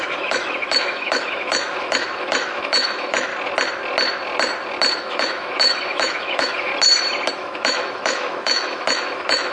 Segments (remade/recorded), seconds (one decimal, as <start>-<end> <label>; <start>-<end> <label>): 0.0-3.3 remade; 3.3-5.0 recorded; 5.0-6.7 remade; 6.7-7.3 recorded; 7.3-9.5 remade